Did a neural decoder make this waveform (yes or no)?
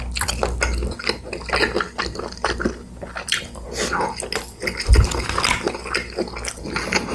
no